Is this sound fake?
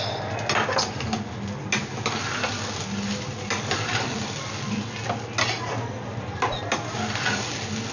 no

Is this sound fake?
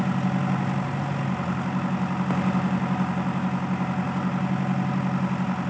no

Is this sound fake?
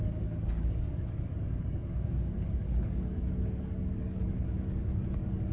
yes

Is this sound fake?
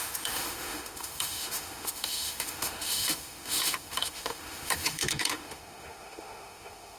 yes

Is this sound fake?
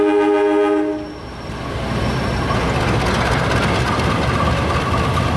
no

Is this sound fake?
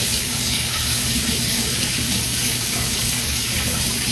yes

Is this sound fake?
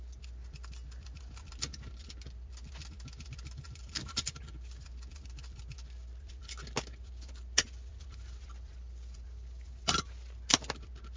no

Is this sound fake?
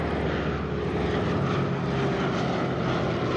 no